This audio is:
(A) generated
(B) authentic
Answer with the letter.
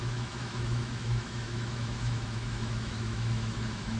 A